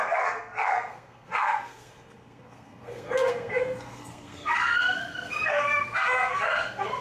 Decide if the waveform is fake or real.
fake